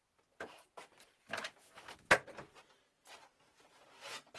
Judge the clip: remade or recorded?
recorded